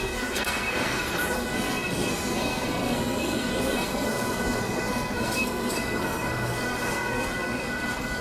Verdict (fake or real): fake